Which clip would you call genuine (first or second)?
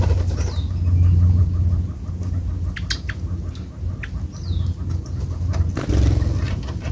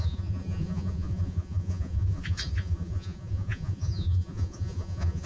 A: first